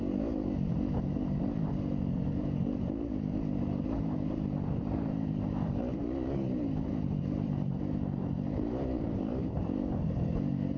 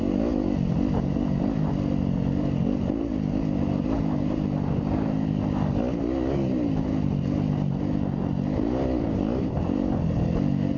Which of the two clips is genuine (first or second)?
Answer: second